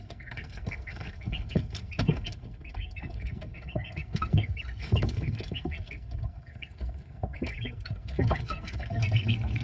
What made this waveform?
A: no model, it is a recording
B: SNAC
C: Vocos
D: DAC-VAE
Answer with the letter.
B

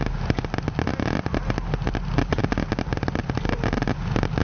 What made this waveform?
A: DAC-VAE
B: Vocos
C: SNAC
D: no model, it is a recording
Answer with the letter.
D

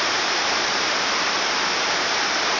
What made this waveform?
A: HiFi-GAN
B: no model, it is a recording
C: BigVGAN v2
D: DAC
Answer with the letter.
C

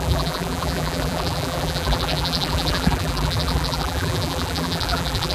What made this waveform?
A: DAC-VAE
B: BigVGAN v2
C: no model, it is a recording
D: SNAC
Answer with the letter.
B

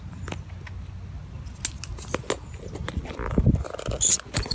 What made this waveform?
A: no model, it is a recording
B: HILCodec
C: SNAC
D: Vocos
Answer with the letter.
A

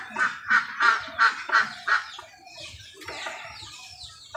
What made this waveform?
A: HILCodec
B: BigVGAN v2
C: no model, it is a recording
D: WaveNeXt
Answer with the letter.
C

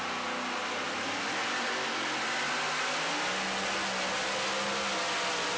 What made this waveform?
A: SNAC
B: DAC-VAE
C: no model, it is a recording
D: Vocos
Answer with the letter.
C